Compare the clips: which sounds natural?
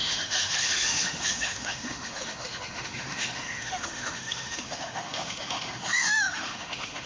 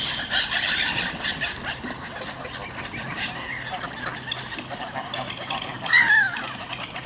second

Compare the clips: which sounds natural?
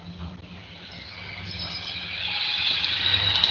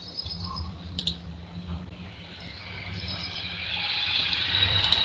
first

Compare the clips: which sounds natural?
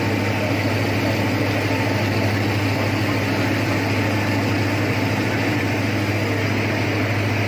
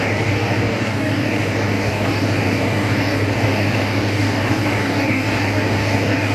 first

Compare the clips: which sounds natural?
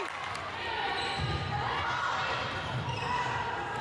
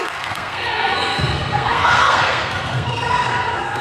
first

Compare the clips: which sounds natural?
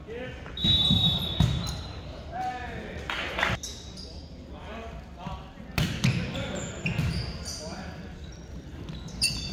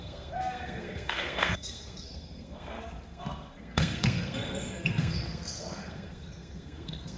first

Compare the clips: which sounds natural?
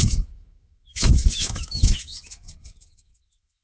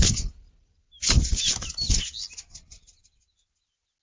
second